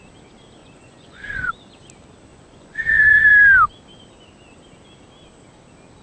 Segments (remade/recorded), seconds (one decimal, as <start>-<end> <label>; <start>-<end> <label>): 0.0-0.6 recorded; 0.6-1.5 remade; 1.5-2.3 recorded; 2.3-3.3 remade; 3.3-6.0 recorded